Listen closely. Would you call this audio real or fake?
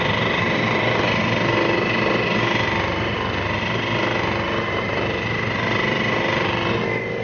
real